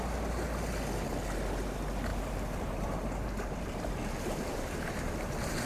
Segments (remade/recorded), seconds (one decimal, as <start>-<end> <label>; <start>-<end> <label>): 0.0-2.1 recorded; 2.1-5.7 remade